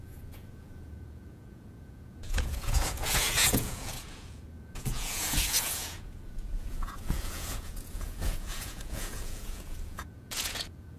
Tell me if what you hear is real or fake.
fake